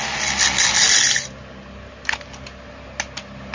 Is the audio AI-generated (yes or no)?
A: no